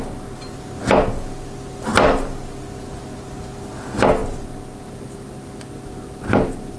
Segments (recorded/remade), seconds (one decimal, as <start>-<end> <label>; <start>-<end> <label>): 0.0-6.8 recorded